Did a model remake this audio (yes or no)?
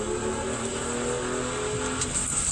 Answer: no